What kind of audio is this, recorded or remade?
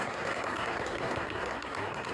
remade